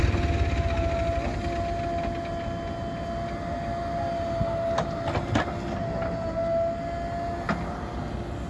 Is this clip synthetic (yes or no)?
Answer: no